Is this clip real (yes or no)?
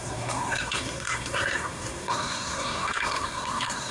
no